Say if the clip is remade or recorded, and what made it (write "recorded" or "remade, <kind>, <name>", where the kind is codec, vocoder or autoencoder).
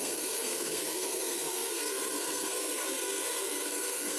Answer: remade, codec, SNAC